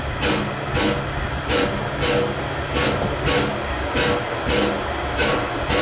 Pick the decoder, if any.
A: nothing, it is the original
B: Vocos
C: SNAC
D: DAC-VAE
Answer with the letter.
A